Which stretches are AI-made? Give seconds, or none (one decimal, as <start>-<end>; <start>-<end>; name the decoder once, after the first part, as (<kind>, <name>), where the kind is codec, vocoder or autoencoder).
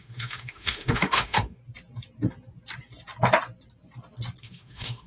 0.0-1.6 (autoencoder, DAC-VAE); 4.4-5.1